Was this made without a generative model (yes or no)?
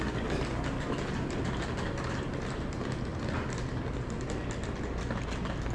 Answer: yes